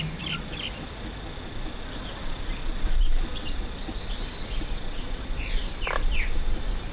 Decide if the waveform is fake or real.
real